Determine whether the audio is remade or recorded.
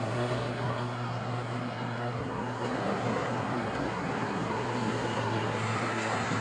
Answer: remade